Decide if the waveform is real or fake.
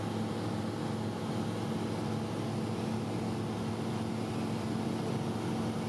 real